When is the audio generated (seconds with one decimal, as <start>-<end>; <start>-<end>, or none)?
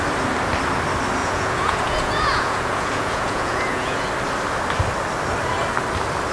1.2-4.1